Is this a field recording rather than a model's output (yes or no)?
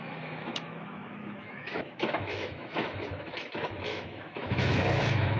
no